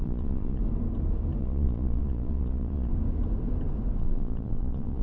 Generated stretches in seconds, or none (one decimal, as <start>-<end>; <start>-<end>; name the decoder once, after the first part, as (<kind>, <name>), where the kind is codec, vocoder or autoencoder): 0.0-0.6 (vocoder, Vocos); 1.4-2.9; 4.0-5.0